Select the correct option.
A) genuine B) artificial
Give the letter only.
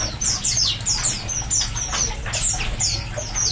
A